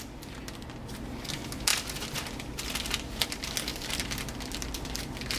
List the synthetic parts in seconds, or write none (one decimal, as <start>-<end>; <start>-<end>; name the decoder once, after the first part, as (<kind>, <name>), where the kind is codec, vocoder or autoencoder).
3.7-5.0 (vocoder, BigVGAN v2)